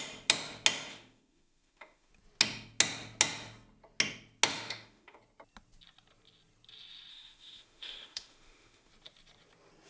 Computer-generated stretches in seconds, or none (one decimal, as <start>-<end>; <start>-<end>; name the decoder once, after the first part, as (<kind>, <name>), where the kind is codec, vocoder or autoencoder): 0.9-2.1 (autoencoder, DAC-VAE); 4.5-5.2; 7.1-8.9